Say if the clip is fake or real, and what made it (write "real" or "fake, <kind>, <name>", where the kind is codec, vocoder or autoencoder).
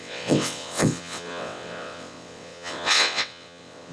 fake, vocoder, WaveNeXt